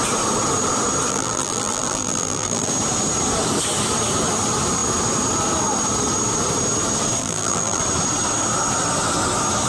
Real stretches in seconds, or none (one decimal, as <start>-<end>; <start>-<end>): 0.0-1.1; 2.7-7.2; 7.8-9.7